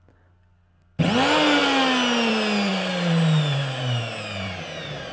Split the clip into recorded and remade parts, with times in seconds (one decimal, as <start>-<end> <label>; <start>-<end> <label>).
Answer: 0.0-2.7 recorded; 2.7-5.1 remade